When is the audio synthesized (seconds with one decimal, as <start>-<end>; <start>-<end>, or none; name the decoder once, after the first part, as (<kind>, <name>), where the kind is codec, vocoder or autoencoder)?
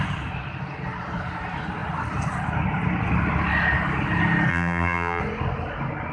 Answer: 4.5-5.2 (vocoder, BigVGAN v2)